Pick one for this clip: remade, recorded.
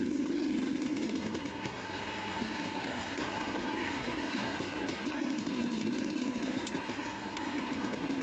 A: remade